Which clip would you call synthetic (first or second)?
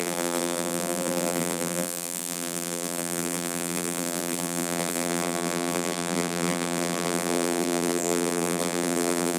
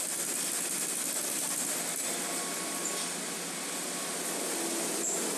first